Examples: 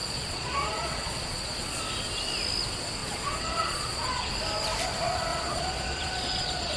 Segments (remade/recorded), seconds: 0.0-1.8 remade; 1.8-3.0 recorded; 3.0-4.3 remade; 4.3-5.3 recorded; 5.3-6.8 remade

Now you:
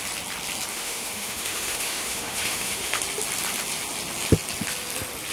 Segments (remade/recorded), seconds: 0.0-0.7 recorded; 0.7-3.0 remade; 3.0-5.3 recorded

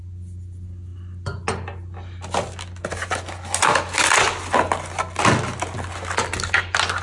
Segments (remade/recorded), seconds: 0.0-7.0 recorded

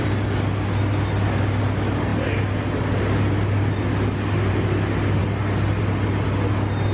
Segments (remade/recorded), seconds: 0.0-6.9 recorded

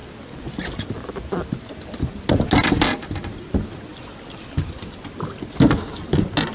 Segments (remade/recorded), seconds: 0.0-6.5 recorded

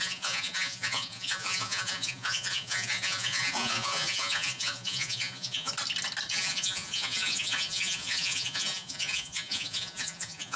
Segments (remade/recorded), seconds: 0.0-5.7 remade; 5.7-6.3 recorded; 6.3-10.6 remade

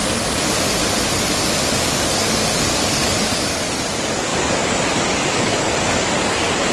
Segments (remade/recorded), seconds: 0.0-1.7 recorded; 1.7-6.7 remade

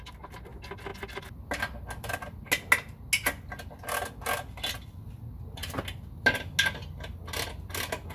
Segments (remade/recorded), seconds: 0.0-8.1 recorded